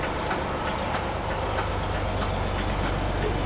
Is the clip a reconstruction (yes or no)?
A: no